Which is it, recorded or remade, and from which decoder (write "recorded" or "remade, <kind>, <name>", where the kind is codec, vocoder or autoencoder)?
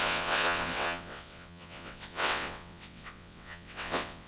remade, vocoder, WaveNeXt